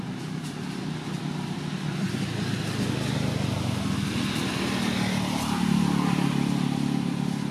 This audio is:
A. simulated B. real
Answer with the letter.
B